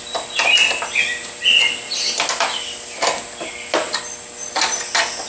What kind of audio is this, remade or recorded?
recorded